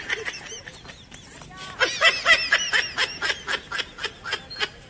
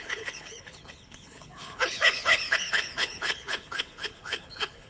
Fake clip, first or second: second